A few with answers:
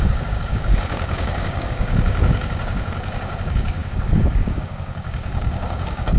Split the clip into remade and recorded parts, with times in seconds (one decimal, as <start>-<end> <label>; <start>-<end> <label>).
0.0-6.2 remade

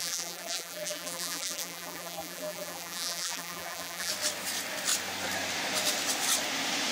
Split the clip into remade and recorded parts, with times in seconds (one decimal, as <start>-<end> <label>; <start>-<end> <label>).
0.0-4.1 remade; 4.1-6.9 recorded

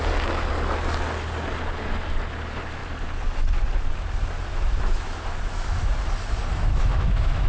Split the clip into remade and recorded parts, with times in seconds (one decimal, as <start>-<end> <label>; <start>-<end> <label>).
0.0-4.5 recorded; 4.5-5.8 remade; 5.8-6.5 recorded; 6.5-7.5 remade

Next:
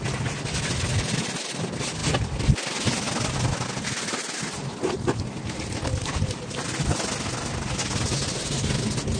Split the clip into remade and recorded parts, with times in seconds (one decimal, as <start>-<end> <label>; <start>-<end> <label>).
0.0-9.2 recorded

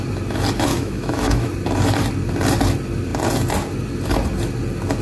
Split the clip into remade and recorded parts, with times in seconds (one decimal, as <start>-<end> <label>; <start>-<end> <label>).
0.0-0.7 recorded; 0.7-1.5 remade; 1.5-5.0 recorded